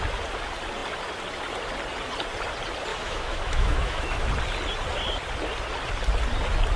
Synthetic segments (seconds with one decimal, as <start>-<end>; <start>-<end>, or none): 2.9-4.3